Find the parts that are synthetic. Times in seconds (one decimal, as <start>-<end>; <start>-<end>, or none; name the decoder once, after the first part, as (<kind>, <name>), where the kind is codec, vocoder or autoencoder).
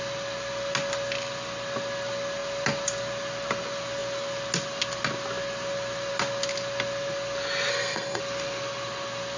7.7-8.2 (codec, SNAC)